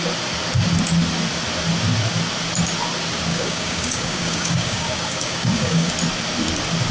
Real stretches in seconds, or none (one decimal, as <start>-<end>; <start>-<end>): 0.0-3.3; 5.9-6.9